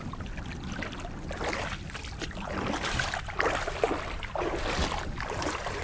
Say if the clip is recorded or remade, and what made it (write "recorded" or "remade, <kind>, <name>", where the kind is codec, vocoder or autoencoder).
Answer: remade, vocoder, BigVGAN v2